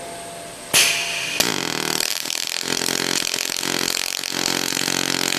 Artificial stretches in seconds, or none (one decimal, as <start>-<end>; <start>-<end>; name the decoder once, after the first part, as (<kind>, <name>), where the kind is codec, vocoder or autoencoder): none